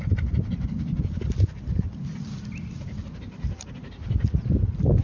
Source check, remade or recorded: recorded